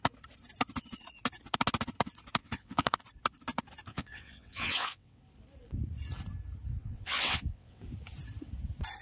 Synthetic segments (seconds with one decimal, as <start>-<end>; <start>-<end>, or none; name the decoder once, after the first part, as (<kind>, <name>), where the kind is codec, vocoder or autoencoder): 2.4-3.0 (vocoder, WaveNeXt); 3.9-5.2; 6.8-7.8